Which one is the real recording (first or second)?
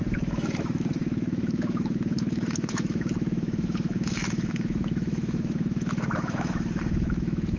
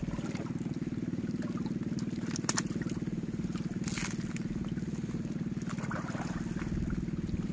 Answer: second